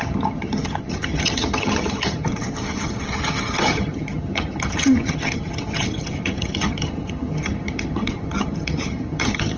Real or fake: fake